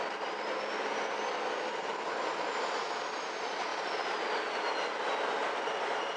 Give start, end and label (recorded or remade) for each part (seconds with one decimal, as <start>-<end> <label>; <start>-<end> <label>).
0.0-6.2 recorded

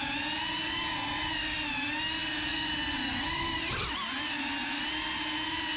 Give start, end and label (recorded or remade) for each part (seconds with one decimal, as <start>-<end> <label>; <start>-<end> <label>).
0.0-5.8 recorded

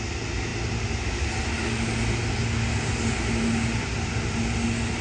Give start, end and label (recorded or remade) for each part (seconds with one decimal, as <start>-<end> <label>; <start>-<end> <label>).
0.0-5.0 recorded

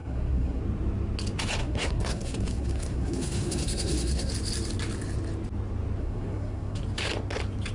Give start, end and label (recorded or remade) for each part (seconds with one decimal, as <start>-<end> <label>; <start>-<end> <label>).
0.0-0.6 remade; 0.6-1.6 recorded; 1.6-4.3 remade; 4.3-6.0 recorded; 6.0-6.8 remade; 6.8-7.7 recorded

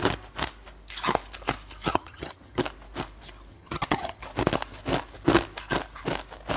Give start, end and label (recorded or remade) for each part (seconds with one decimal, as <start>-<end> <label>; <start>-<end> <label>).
0.0-1.9 recorded; 1.9-2.6 remade; 2.6-3.5 recorded; 3.5-4.2 remade; 4.2-6.6 recorded